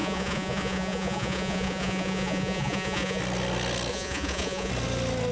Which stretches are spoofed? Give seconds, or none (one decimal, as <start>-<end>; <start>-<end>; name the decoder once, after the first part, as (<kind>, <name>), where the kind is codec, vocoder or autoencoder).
0.0-3.2 (vocoder, Vocos); 3.9-4.7